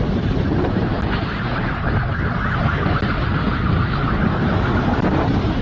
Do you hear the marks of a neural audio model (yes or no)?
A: no